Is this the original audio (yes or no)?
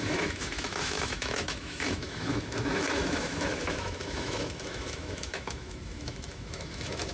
no